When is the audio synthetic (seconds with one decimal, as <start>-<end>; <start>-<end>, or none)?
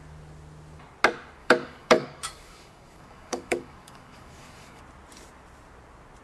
1.4-4.8